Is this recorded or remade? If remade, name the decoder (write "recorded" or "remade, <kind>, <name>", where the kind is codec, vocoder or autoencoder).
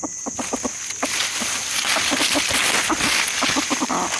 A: recorded